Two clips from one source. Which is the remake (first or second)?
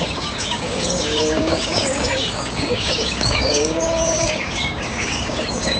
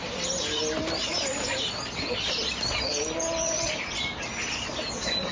first